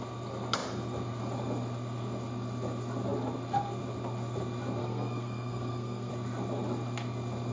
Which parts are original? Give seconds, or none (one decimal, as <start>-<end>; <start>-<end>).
0.0-4.8; 6.1-7.5